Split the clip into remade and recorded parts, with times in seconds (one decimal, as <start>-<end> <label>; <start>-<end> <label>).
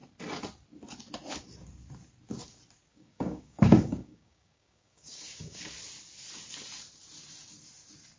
0.0-2.9 recorded; 2.9-5.6 remade; 5.6-8.2 recorded